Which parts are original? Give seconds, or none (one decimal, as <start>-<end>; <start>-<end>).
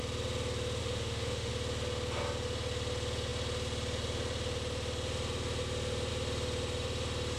0.0-0.8; 1.5-7.4